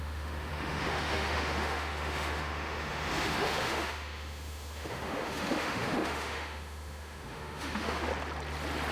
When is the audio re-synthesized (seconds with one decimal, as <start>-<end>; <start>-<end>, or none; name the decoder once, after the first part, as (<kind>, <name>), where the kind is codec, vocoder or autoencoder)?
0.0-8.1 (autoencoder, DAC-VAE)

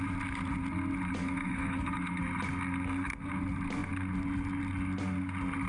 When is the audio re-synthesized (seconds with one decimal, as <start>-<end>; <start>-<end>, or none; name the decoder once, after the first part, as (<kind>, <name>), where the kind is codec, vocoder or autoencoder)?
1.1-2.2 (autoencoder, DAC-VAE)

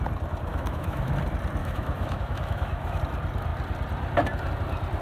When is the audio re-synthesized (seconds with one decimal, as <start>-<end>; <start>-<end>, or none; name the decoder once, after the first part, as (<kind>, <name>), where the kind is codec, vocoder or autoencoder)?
0.5-1.1 (autoencoder, DAC-VAE); 1.6-3.0